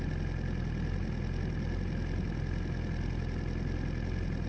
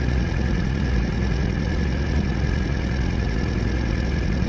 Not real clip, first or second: second